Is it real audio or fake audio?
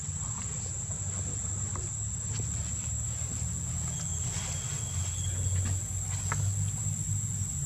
real